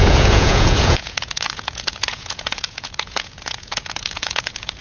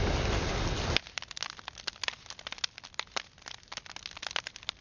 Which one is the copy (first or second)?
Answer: first